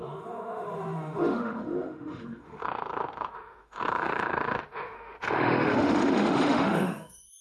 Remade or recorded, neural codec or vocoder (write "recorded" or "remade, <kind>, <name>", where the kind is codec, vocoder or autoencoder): remade, autoencoder, DAC-VAE